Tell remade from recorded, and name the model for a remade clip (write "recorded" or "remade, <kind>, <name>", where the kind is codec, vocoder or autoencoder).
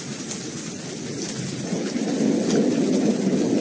recorded